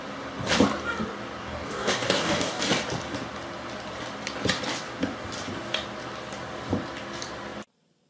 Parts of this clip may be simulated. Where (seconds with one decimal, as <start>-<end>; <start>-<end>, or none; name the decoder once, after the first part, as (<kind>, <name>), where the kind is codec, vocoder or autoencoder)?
1.4-2.6 (codec, DAC)